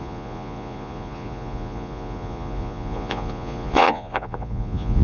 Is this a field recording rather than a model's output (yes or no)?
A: no